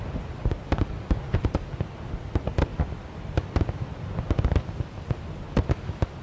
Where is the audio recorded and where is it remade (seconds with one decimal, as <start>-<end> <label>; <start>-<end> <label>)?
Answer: 0.0-6.2 recorded